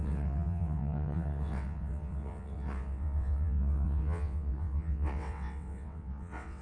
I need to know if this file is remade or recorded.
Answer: remade